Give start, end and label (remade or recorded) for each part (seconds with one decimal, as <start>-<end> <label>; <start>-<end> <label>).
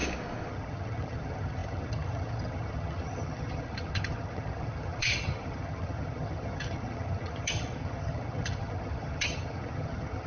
0.0-0.5 recorded; 0.5-10.3 remade